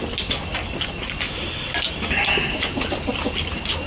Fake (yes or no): no